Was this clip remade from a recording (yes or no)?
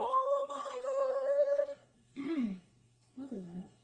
yes